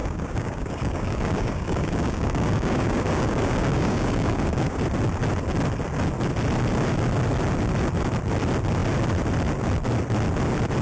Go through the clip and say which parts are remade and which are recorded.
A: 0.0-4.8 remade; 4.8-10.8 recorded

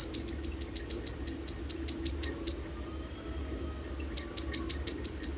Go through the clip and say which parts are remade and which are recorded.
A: 0.0-5.4 recorded

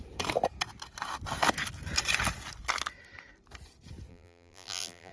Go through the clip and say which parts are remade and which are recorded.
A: 0.0-4.1 recorded; 4.1-5.1 remade

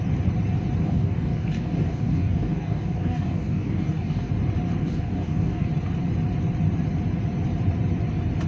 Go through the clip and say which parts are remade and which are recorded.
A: 0.0-0.8 recorded; 0.8-4.3 remade; 4.3-4.8 recorded; 4.8-5.7 remade; 5.7-8.5 recorded

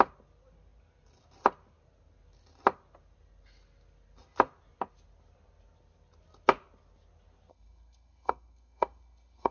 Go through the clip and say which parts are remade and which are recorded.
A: 0.0-7.5 recorded; 7.5-9.5 remade

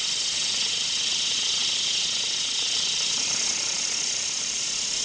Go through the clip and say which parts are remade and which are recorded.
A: 0.0-5.0 recorded